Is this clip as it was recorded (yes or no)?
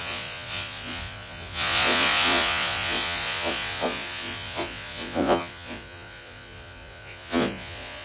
no